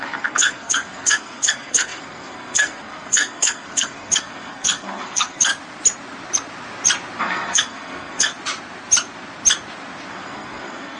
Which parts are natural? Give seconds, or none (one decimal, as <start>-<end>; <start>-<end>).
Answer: 5.5-7.2; 8.3-10.1